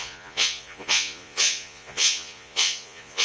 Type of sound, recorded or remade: remade